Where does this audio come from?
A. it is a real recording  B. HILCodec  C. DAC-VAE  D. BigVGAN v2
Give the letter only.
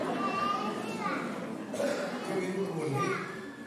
A